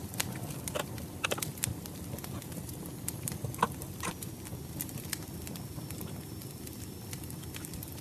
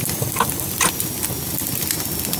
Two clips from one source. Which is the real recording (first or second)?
second